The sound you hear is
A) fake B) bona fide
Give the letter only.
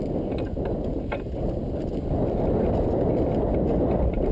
B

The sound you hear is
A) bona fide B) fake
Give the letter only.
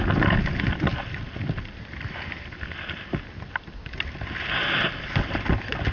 A